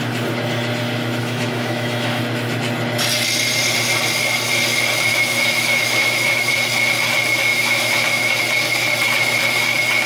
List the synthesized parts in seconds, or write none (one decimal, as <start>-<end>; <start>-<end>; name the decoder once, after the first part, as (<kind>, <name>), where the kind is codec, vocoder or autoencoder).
1.2-2.2 (autoencoder, DAC-VAE); 5.1-6.5; 7.5-8.4